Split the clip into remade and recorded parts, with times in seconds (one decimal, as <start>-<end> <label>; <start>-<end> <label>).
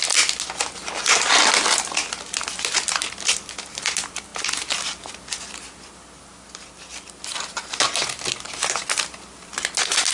0.0-10.1 recorded